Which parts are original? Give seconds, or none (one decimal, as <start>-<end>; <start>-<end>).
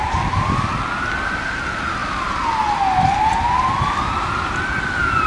0.0-5.3